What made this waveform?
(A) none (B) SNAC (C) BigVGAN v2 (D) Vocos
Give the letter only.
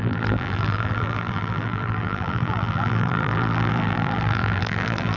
C